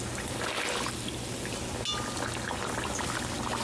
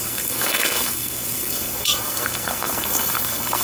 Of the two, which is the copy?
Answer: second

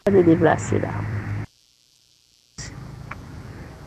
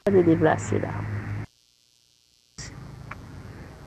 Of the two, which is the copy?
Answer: first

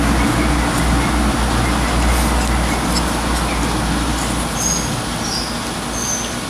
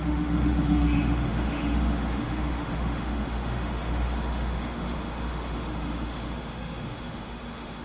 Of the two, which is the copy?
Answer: second